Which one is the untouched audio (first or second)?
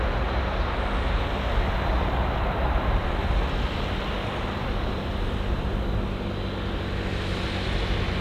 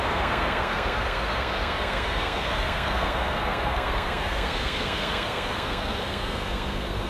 first